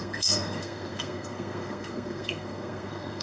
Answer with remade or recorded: remade